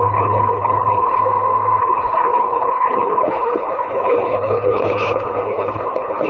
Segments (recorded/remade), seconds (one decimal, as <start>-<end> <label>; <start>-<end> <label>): 0.0-1.2 remade; 1.2-1.8 recorded; 1.8-6.3 remade